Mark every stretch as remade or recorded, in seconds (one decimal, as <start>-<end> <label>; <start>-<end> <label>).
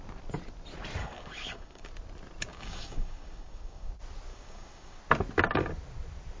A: 0.0-1.0 recorded; 1.0-1.9 remade; 1.9-2.5 recorded; 2.5-3.9 remade; 3.9-4.3 recorded; 4.3-5.0 remade; 5.0-6.4 recorded